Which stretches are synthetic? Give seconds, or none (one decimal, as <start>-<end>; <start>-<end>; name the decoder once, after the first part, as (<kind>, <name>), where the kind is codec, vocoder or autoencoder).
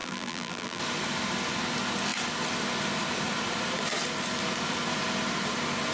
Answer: 0.0-0.8 (vocoder, BigVGAN v2)